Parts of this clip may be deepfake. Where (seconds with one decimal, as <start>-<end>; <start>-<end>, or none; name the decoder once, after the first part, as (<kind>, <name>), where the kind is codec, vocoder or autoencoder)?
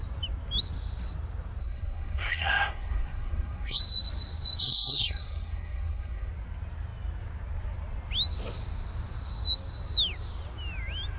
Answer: 1.6-3.8 (codec, SNAC); 4.6-6.3